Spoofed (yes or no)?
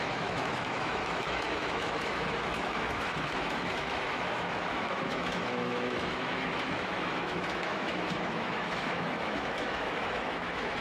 yes